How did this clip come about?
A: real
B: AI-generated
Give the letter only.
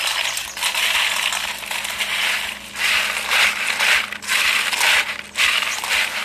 A